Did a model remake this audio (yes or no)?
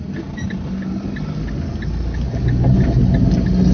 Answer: no